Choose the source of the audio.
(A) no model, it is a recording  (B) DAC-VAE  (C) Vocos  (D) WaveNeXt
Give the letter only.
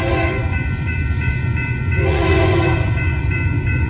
C